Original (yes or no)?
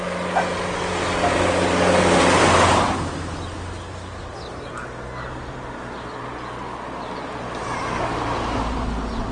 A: yes